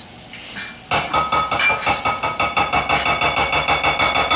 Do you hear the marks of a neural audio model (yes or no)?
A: no